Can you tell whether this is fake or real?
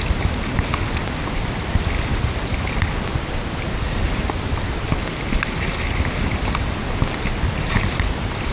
real